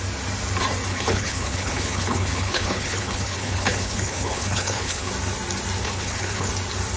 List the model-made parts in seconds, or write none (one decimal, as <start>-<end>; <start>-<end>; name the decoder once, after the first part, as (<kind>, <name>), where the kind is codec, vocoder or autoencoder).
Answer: 0.9-5.1 (codec, HILCodec); 5.8-6.5